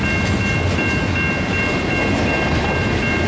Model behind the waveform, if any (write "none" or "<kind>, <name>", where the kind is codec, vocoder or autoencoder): none